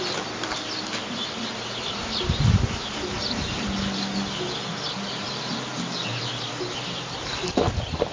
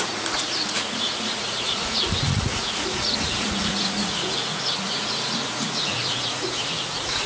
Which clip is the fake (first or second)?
second